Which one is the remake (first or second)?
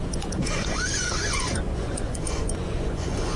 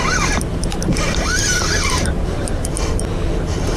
first